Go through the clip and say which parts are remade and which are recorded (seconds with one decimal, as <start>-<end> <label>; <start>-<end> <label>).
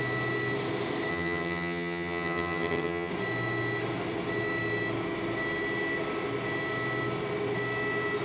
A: 0.0-1.1 recorded; 1.1-3.1 remade; 3.1-8.2 recorded